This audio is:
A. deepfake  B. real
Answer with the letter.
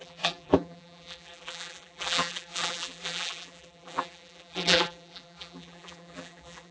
A